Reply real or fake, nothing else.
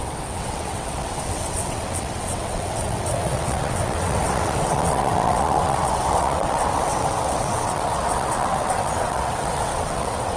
fake